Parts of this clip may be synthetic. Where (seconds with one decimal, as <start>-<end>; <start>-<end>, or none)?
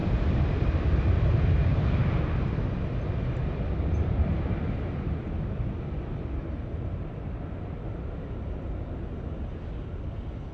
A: none